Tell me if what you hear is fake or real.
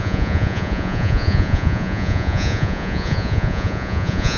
fake